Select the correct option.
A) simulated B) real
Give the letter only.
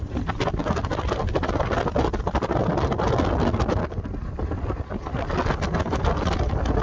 B